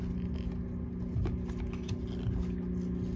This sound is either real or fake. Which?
real